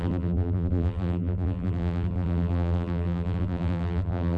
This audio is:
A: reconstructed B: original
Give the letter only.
A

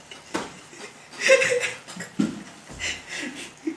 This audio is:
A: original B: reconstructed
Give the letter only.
A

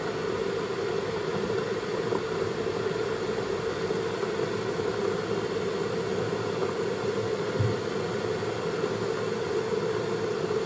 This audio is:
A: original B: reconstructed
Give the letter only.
A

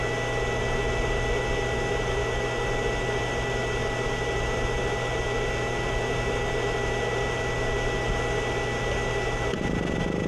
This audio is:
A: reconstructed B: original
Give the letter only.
B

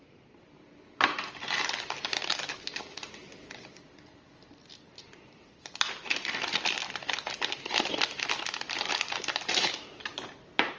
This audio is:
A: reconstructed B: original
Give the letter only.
A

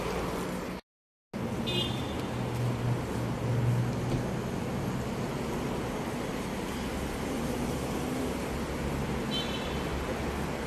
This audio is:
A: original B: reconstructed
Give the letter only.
A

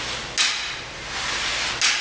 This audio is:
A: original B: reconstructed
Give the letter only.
A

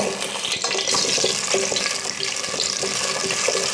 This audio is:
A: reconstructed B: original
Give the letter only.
B